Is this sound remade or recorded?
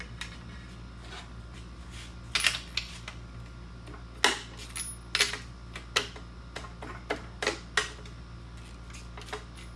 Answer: recorded